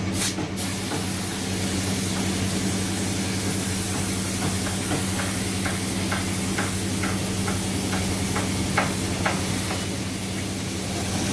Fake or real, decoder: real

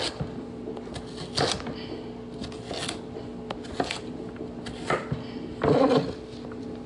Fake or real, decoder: real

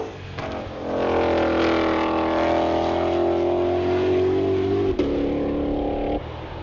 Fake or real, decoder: real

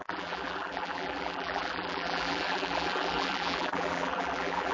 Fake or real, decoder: fake, vocoder, BigVGAN v2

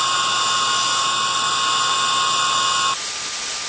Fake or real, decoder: real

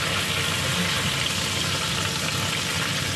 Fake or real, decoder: real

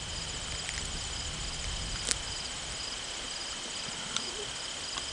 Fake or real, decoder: real